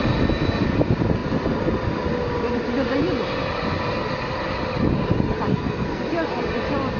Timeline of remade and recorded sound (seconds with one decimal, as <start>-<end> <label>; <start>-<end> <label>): 0.0-5.5 recorded; 5.5-6.1 remade; 6.1-7.0 recorded

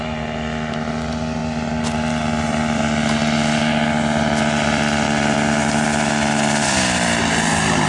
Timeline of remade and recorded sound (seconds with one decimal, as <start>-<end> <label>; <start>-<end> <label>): 0.0-7.9 recorded

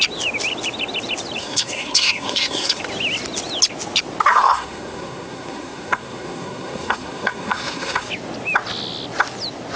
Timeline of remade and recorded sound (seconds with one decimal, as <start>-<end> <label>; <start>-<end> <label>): 0.0-1.4 recorded; 1.4-2.8 remade; 2.8-4.3 recorded; 4.3-8.1 remade; 8.1-9.8 recorded

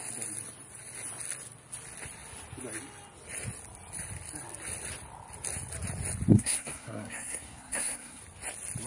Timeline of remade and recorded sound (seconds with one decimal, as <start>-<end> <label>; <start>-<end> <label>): 0.0-6.3 recorded; 6.3-8.2 remade; 8.2-8.9 recorded

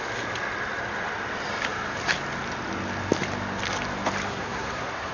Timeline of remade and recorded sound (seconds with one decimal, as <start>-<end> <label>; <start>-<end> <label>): 0.0-4.3 recorded; 4.3-5.1 remade

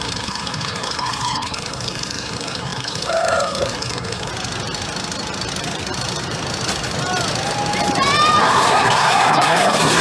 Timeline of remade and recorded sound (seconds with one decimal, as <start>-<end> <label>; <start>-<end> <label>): 0.0-4.3 remade; 4.3-8.4 recorded; 8.4-10.0 remade

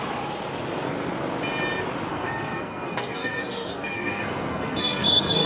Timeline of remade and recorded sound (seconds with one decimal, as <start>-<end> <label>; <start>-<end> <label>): 0.0-2.1 recorded; 2.1-5.5 remade